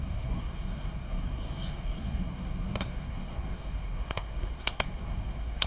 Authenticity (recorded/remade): remade